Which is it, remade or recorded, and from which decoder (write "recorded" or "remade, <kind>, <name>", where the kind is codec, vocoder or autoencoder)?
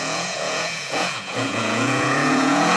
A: remade, vocoder, Vocos